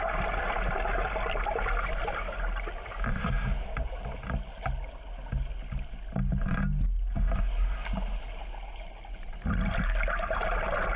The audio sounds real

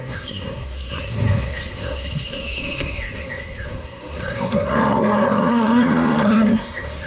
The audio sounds fake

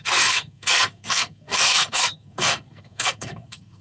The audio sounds fake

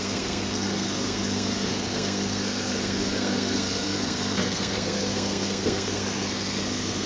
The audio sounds fake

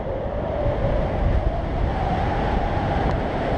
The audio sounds real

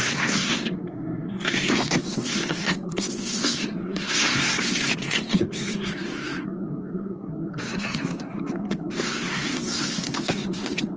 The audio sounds fake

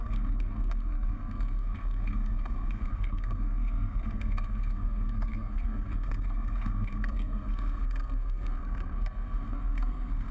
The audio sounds fake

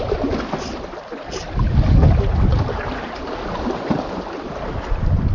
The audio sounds real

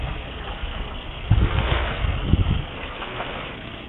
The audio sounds fake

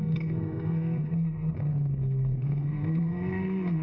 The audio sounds fake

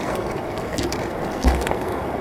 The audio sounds fake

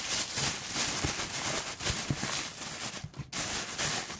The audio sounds real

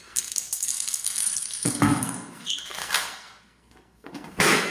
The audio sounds fake